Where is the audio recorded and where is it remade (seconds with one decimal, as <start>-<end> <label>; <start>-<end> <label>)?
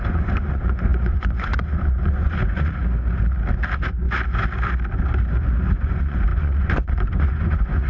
0.0-2.8 remade; 2.8-5.7 recorded; 5.7-7.9 remade